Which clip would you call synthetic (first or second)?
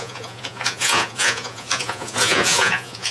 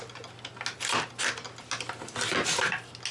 first